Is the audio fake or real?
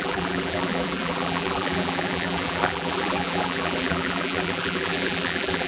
fake